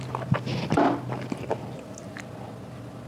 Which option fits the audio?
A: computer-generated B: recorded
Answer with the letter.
B